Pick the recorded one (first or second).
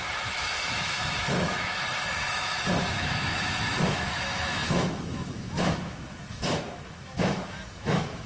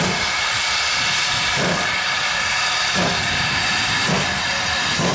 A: second